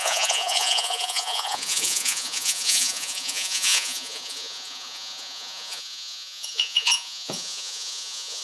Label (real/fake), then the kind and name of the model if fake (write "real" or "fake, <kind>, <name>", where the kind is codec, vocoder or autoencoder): fake, vocoder, Vocos